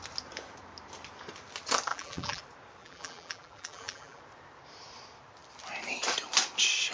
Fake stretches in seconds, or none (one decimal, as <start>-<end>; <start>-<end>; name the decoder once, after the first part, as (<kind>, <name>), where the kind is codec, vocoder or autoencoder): 1.9-2.4 (vocoder, BigVGAN v2); 2.8-4.2